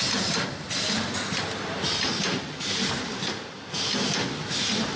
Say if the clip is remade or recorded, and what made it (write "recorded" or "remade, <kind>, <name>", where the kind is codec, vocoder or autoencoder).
recorded